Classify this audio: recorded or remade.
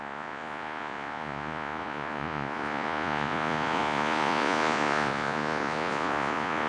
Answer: remade